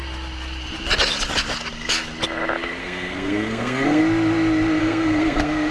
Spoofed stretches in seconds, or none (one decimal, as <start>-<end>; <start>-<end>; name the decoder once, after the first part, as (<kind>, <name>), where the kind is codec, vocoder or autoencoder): 2.8-4.0 (codec, SNAC); 4.8-5.7

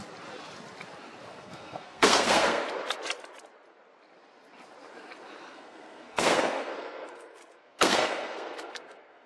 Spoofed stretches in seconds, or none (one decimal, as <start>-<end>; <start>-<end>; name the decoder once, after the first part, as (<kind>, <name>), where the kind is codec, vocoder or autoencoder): 1.3-2.6 (codec, SNAC); 5.5-9.3

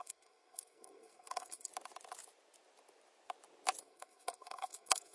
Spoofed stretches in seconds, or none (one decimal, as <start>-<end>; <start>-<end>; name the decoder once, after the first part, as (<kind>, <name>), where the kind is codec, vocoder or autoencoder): 0.0-1.7 (codec, SNAC); 3.8-5.1

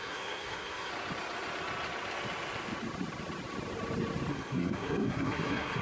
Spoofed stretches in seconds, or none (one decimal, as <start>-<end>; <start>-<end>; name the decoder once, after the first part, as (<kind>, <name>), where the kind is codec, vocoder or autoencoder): 0.0-0.9 (codec, SNAC); 4.3-5.8